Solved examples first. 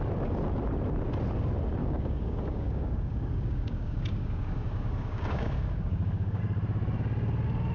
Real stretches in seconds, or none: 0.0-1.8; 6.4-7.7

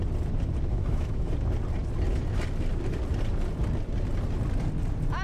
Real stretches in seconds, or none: 0.0-0.7; 1.3-5.2

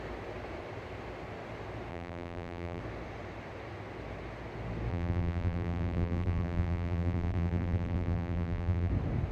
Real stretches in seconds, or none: 0.0-1.9; 2.8-4.9; 8.9-9.3

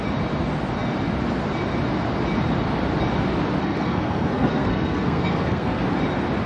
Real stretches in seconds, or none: 0.0-3.6; 5.8-6.5

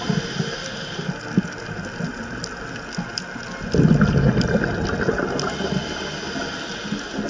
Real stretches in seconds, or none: 0.0-7.3

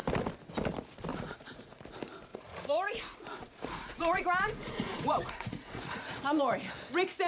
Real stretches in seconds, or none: 0.0-1.1; 1.8-2.3; 6.4-7.3